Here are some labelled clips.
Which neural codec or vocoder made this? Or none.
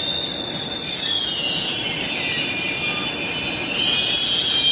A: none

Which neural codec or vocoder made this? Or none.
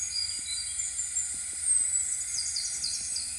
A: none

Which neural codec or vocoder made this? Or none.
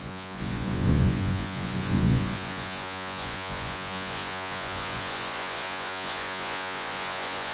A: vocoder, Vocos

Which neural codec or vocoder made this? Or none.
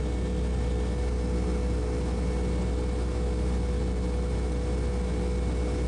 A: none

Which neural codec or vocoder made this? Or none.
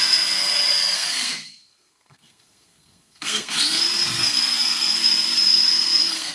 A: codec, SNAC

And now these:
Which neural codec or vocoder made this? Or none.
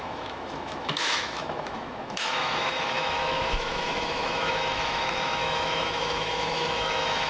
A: autoencoder, DAC-VAE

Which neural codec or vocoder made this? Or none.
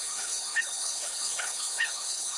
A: codec, HILCodec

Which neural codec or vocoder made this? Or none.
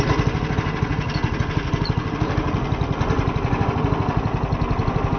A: none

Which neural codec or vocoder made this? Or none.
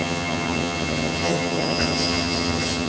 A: vocoder, HiFi-GAN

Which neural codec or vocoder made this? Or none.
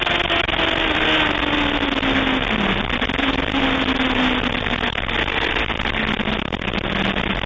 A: none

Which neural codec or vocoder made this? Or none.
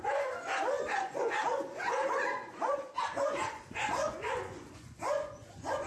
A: vocoder, Vocos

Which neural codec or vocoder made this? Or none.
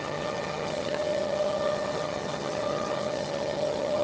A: vocoder, HiFi-GAN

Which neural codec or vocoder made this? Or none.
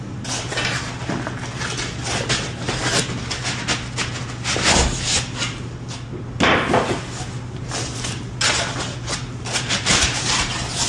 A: none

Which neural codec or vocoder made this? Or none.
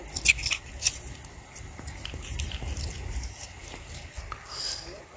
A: none